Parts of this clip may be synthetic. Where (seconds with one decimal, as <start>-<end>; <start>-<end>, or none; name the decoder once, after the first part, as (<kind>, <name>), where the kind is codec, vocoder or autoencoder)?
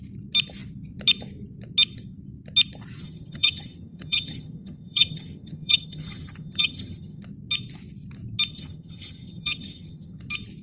3.0-7.2 (vocoder, HiFi-GAN); 8.5-10.2